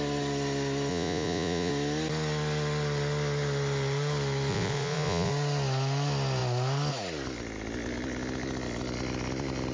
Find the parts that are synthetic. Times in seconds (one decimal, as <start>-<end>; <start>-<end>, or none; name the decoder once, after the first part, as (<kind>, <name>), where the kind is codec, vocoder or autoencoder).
0.9-1.7 (vocoder, Vocos); 4.5-5.3